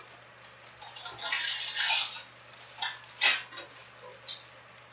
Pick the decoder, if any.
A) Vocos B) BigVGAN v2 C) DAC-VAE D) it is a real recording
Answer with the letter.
D